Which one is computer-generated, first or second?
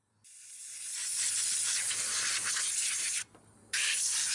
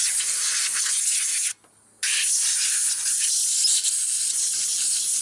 first